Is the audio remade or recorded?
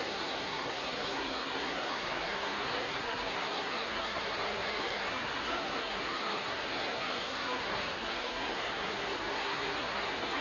remade